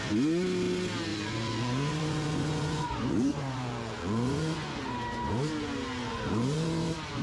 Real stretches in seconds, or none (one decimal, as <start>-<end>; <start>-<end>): 0.0-1.1; 4.8-6.0